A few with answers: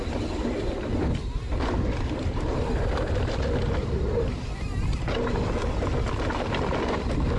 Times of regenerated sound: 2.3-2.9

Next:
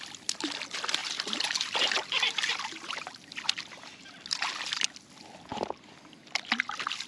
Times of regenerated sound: 1.0-3.1

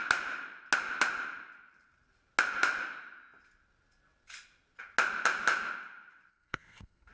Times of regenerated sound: 6.3-7.1